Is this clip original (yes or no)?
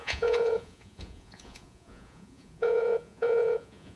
no